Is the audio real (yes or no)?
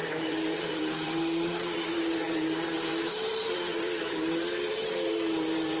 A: no